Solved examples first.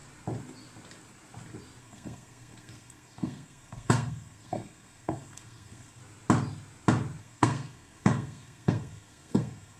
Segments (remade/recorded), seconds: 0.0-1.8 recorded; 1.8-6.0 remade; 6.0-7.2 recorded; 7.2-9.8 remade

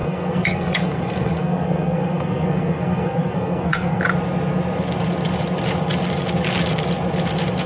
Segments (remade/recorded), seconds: 0.0-4.0 remade; 4.0-7.7 recorded